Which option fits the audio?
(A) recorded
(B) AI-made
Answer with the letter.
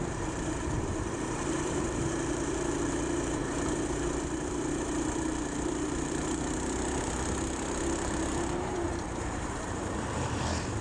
B